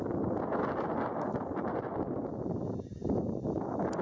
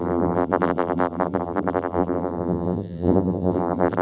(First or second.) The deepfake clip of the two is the second